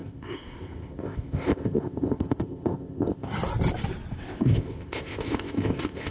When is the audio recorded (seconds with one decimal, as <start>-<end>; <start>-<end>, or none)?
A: 3.3-4.2